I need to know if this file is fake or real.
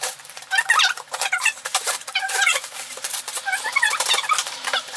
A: fake